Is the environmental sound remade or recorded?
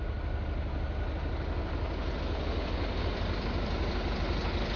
recorded